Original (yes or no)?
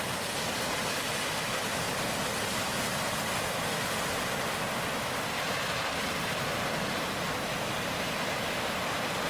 yes